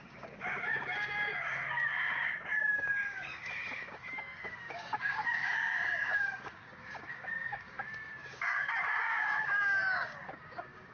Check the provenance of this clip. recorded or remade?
remade